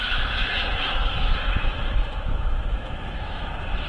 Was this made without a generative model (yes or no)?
no